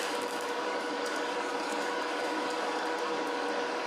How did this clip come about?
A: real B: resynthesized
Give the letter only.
B